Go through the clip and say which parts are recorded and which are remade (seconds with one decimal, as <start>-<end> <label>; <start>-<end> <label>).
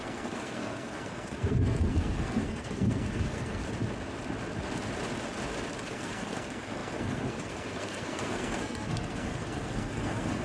0.0-3.6 remade; 3.6-5.9 recorded; 5.9-10.4 remade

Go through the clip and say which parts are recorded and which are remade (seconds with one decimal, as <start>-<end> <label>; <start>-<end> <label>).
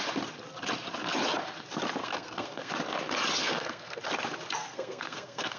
0.0-2.0 recorded; 2.0-2.7 remade; 2.7-3.4 recorded; 3.4-4.0 remade; 4.0-4.6 recorded; 4.6-5.6 remade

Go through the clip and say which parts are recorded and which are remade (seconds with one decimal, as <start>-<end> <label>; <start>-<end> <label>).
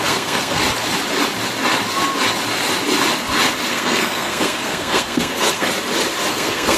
0.0-0.6 remade; 0.6-3.7 recorded; 3.7-5.7 remade; 5.7-6.3 recorded; 6.3-6.8 remade